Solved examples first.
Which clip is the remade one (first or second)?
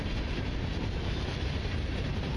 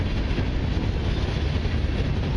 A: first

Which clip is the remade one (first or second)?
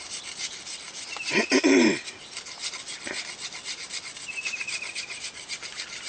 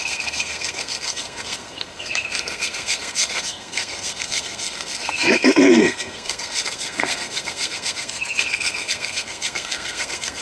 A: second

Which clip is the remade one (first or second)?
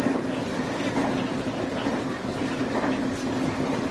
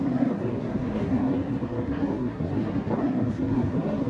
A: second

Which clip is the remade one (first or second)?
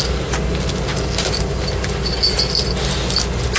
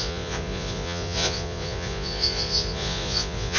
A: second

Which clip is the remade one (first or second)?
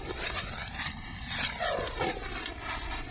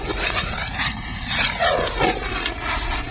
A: second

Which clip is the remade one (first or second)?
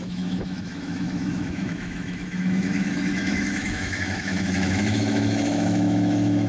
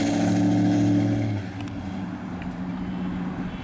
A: first